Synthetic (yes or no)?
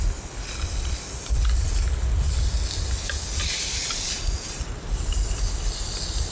no